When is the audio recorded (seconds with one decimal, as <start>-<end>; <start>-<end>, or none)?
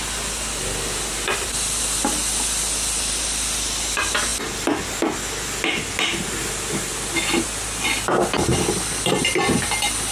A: 0.0-10.1